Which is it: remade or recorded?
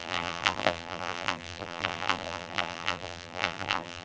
remade